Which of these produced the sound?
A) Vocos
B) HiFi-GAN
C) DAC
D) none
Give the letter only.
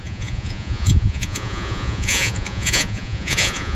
A